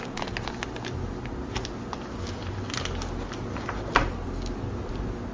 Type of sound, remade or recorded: recorded